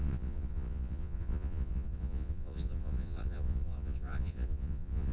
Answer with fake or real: fake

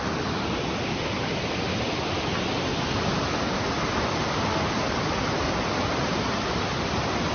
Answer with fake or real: real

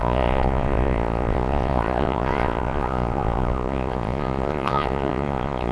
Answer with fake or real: fake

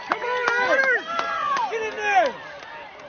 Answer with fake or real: real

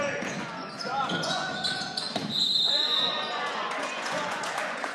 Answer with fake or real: fake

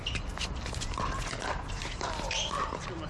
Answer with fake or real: real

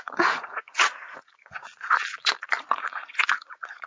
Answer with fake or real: fake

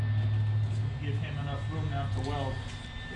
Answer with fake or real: real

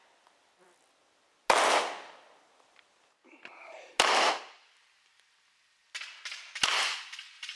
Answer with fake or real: real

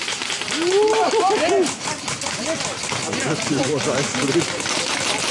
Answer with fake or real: real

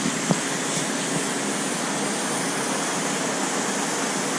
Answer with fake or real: real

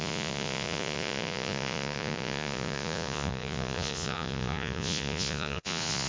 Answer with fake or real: fake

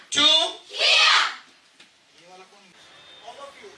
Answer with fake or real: real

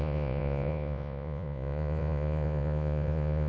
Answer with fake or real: fake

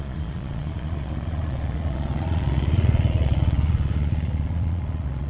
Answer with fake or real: fake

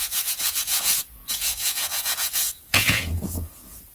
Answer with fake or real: fake